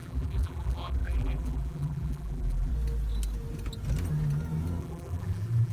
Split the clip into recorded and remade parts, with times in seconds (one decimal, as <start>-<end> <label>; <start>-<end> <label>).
0.0-2.7 remade; 2.7-4.8 recorded; 4.8-5.7 remade